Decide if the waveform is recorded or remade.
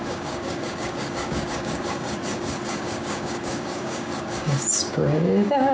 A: remade